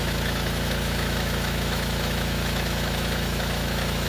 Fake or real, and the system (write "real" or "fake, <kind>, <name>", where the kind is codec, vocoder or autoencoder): fake, autoencoder, DAC-VAE